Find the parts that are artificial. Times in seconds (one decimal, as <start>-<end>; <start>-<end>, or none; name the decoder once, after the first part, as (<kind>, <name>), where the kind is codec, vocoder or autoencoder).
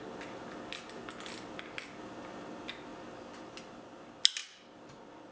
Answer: none